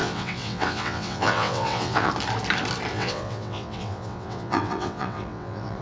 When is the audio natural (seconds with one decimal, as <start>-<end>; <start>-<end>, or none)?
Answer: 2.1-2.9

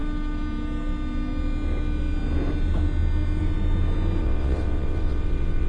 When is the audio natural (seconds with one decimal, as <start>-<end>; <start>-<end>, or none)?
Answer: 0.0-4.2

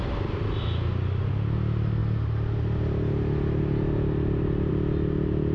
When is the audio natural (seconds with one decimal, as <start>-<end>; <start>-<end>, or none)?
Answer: 0.0-5.5